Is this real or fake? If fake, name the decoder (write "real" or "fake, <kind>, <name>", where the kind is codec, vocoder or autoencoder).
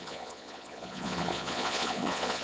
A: fake, vocoder, Vocos